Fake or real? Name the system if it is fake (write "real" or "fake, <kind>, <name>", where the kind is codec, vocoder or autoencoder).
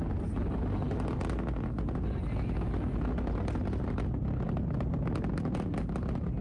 real